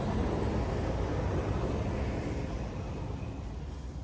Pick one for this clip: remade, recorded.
recorded